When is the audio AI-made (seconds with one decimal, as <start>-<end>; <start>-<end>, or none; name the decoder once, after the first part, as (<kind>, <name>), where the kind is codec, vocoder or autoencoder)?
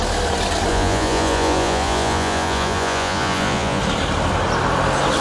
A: 0.7-3.8 (vocoder, Vocos)